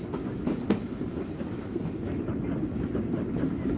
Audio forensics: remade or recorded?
recorded